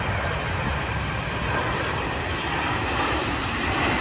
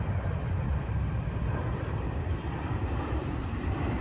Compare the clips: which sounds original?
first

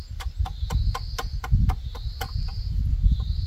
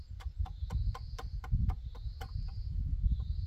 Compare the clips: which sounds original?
first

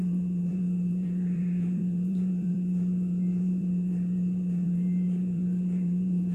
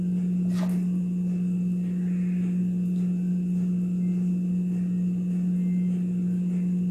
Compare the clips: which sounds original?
second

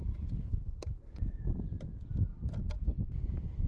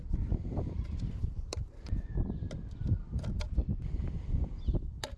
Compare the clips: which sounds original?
first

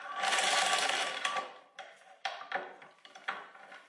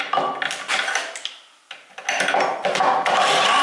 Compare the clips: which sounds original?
second